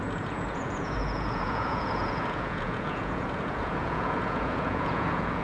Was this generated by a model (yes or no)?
yes